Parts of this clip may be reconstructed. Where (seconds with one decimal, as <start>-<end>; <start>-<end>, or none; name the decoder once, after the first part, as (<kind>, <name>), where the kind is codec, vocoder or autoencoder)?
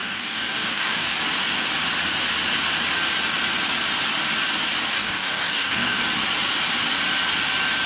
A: 0.0-1.2 (codec, DAC); 4.9-6.0